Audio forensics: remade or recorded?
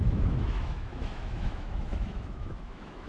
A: remade